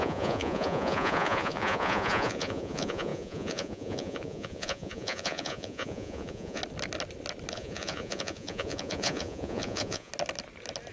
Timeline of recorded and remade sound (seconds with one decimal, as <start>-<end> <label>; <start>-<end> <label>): 0.0-6.6 remade; 6.6-7.5 recorded; 7.5-10.1 remade; 10.1-10.9 recorded